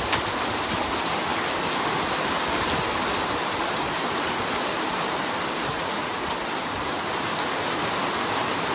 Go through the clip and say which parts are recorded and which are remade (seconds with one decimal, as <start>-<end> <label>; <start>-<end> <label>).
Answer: 0.0-5.7 recorded; 5.7-6.3 remade; 6.3-6.8 recorded; 6.8-7.3 remade; 7.3-8.7 recorded